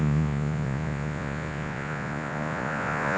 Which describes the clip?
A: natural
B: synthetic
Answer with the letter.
B